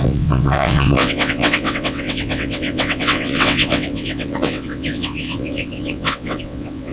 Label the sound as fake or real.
fake